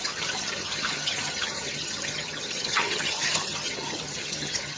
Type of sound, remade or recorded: remade